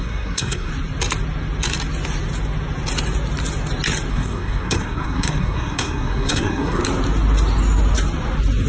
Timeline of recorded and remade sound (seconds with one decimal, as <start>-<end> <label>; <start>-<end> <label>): 0.0-0.7 remade; 0.7-4.1 recorded; 4.1-6.8 remade; 6.8-8.7 recorded